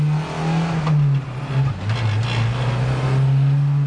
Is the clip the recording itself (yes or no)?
yes